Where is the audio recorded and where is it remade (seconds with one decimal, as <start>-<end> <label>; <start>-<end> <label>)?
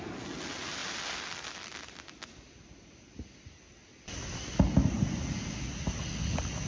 0.0-6.7 recorded